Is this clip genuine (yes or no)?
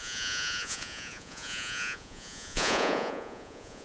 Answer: no